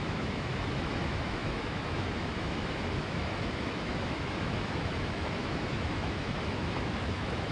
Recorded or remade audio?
remade